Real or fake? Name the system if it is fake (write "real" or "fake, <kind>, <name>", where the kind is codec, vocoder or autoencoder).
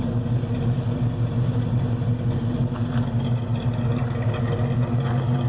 real